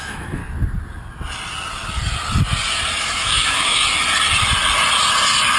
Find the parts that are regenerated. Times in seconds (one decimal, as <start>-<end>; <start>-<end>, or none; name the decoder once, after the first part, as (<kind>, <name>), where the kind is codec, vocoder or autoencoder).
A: 0.0-0.4 (autoencoder, DAC-VAE); 3.0-3.8